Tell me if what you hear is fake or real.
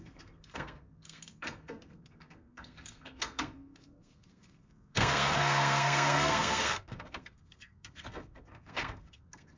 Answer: fake